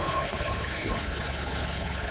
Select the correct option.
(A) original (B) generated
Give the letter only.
B